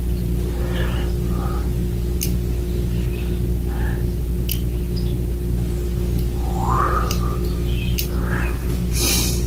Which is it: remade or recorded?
recorded